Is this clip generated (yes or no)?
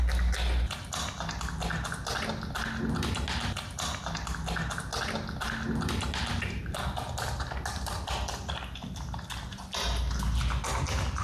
no